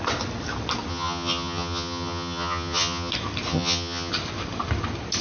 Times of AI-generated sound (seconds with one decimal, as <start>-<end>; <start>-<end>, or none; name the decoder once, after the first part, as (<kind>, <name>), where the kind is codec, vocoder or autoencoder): 0.9-3.1 (vocoder, HiFi-GAN); 3.5-4.1